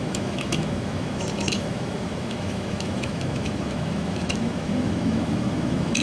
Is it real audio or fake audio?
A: fake